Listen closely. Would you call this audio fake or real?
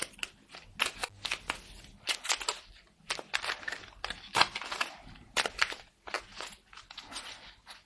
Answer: real